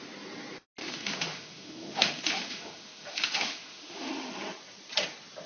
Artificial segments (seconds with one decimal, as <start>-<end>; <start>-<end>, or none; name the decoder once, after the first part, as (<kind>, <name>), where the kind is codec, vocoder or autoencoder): 0.8-4.1 (autoencoder, DAC-VAE)